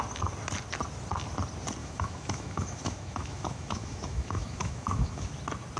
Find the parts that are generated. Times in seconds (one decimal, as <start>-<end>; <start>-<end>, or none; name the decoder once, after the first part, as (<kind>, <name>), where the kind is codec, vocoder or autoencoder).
1.8-5.3 (autoencoder, DAC-VAE)